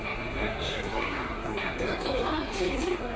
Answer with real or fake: fake